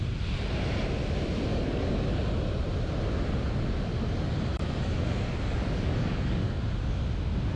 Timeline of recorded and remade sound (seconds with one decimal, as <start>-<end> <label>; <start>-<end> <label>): 0.0-1.5 recorded; 1.5-2.1 remade; 2.1-4.5 recorded; 4.5-6.6 remade; 6.6-7.6 recorded